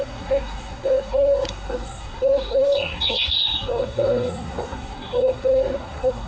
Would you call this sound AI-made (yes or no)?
yes